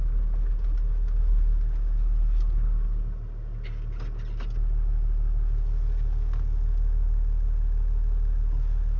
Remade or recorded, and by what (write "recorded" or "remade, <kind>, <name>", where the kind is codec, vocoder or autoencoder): recorded